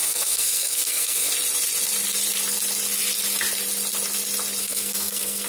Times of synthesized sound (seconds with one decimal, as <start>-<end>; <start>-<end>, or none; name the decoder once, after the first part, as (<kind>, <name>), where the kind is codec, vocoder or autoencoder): 0.0-1.3 (codec, SNAC); 4.6-5.5

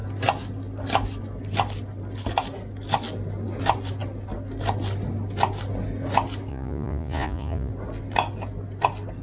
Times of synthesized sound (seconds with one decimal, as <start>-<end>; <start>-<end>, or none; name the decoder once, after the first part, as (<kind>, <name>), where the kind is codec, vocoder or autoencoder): 6.5-7.7 (vocoder, Vocos)